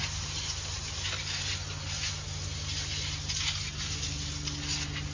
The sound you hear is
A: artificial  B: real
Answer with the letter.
B